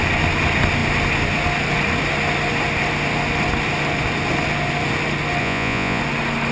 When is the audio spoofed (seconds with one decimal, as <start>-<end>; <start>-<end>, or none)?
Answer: 5.4-6.0